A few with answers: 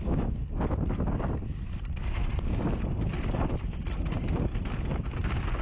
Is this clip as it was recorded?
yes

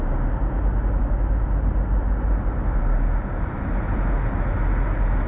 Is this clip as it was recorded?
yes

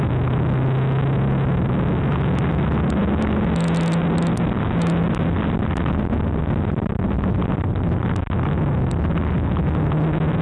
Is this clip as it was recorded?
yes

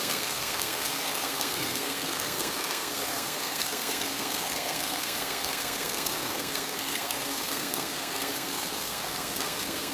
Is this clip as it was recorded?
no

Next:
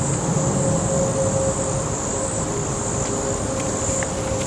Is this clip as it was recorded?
yes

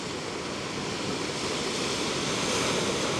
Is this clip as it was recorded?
yes